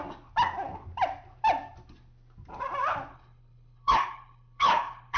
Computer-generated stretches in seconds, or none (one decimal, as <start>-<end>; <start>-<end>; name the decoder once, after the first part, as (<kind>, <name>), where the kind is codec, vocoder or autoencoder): 3.1-5.2 (codec, HILCodec)